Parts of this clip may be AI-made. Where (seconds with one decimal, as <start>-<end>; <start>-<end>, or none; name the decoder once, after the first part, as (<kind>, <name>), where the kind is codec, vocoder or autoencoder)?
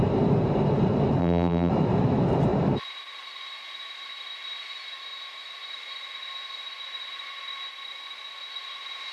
1.2-1.7 (vocoder, BigVGAN v2)